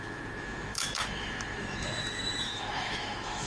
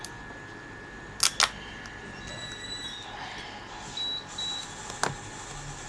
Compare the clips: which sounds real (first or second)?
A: second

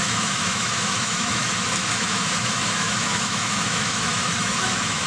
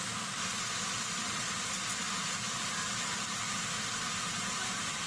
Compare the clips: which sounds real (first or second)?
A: second